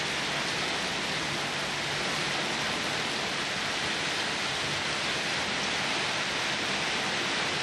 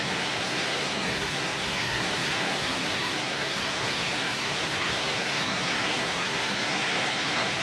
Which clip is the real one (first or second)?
first